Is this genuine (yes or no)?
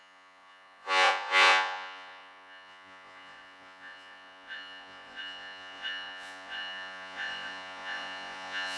no